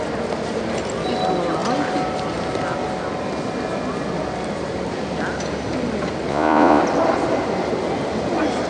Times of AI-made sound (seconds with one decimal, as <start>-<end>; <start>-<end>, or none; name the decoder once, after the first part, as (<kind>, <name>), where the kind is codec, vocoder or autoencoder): 6.3-6.8 (vocoder, Vocos)